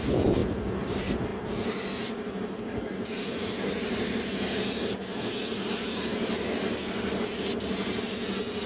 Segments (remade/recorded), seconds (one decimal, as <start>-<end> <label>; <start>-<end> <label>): 0.0-8.7 recorded